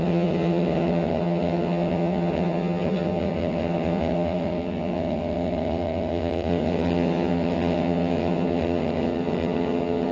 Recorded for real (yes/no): no